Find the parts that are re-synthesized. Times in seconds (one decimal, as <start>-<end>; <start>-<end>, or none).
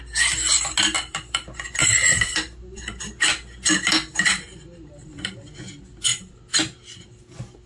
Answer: none